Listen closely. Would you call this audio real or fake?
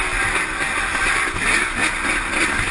real